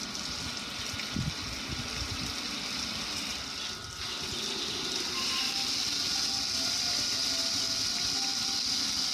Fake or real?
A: real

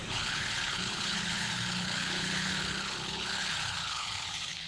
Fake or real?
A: fake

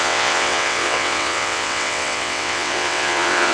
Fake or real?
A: fake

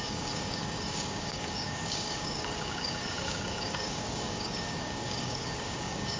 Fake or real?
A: fake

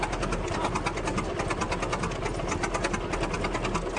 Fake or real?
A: real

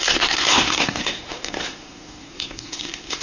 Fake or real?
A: fake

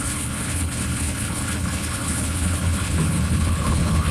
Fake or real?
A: fake